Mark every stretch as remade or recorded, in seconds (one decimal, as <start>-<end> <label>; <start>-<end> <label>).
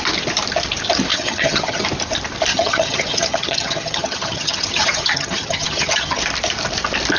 0.0-1.1 recorded; 1.1-1.8 remade; 1.8-2.5 recorded; 2.5-6.2 remade; 6.2-7.2 recorded